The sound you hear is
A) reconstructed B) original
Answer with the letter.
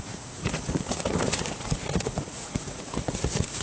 A